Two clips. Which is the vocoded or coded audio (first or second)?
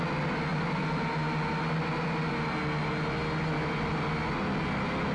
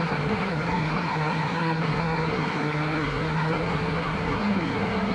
second